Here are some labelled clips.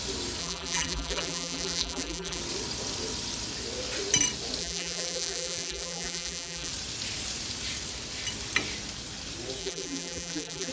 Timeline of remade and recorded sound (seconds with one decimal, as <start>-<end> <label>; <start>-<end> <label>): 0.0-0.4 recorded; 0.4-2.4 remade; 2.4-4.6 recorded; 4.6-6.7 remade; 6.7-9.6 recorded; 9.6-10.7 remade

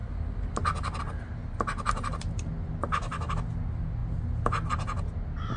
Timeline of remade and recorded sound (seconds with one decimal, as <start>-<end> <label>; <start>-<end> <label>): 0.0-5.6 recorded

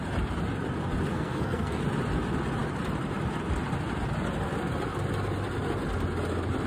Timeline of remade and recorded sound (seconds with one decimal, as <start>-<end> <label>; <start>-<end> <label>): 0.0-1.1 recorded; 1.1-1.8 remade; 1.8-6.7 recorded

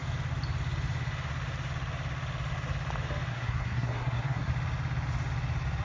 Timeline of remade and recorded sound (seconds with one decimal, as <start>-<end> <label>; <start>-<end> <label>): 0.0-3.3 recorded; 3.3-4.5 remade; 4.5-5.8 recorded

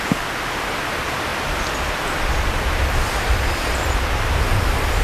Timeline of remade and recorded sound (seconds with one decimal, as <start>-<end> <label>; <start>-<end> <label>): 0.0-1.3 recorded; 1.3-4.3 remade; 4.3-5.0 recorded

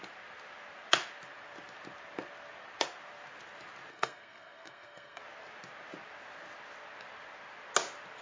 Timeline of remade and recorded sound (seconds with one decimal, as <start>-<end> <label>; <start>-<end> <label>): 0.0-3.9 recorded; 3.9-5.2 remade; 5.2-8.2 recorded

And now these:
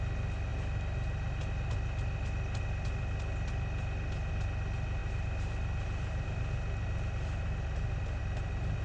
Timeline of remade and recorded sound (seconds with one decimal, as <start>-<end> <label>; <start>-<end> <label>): 0.0-5.0 recorded; 5.0-8.2 remade; 8.2-8.8 recorded

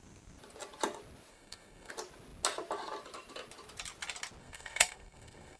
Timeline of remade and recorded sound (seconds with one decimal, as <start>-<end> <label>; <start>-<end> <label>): 0.0-1.3 recorded; 1.3-1.9 remade; 1.9-4.4 recorded; 4.4-5.6 remade